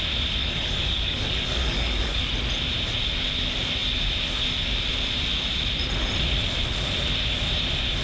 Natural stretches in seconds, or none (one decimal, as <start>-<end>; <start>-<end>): 0.0-0.4; 2.3-8.0